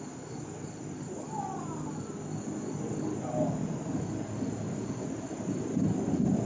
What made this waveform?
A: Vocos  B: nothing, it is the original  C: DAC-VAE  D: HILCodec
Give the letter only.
B